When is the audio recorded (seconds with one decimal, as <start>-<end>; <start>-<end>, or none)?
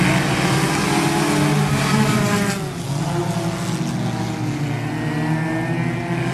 0.0-6.3